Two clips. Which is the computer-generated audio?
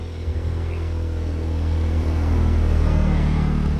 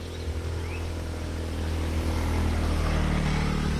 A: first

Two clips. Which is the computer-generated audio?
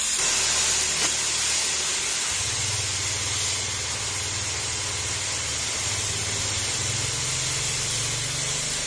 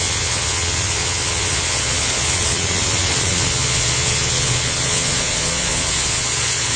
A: second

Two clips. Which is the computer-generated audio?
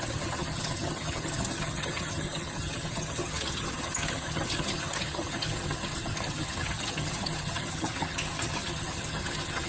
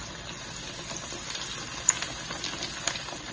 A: first